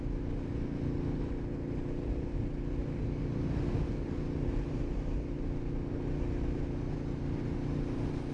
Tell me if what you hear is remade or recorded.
recorded